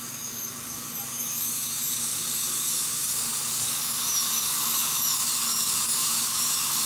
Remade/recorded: remade